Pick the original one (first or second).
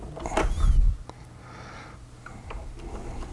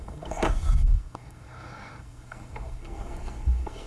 first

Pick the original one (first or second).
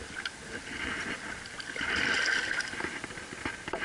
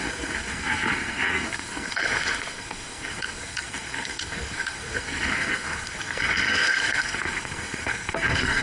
first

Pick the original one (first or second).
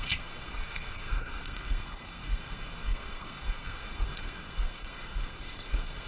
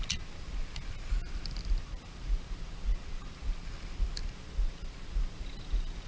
second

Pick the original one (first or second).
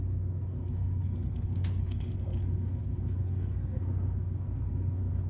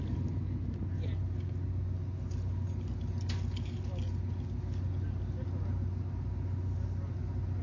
second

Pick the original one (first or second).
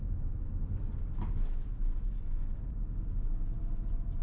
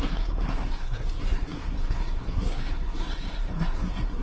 first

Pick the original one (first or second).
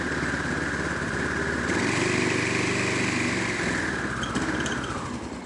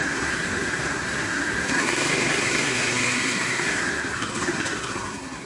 first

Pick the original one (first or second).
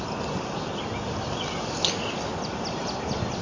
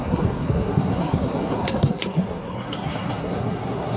first